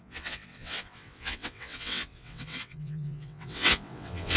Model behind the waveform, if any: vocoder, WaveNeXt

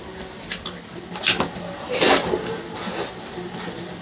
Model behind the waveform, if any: none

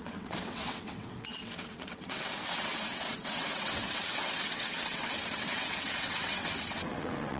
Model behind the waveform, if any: vocoder, WaveNeXt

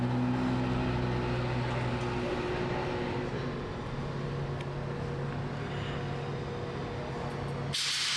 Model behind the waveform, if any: none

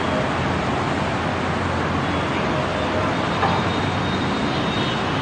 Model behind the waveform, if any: none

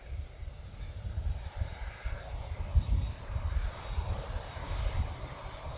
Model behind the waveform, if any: none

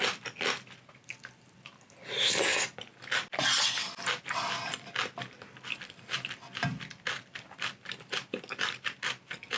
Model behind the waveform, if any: none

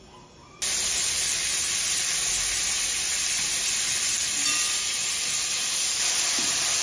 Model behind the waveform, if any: none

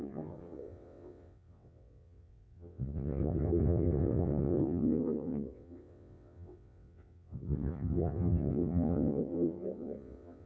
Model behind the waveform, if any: vocoder, WaveNeXt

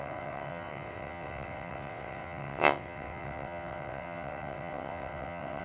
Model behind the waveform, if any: vocoder, WaveNeXt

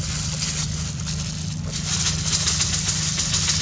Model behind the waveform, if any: none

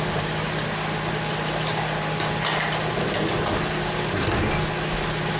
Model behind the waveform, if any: none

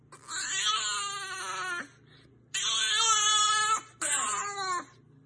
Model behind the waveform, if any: none